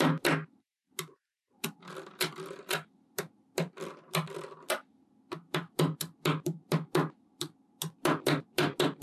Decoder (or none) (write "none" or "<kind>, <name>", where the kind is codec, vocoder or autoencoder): none